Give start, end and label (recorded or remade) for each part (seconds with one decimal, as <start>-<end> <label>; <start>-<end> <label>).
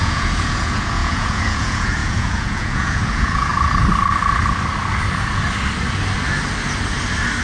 0.0-3.5 remade; 3.5-7.4 recorded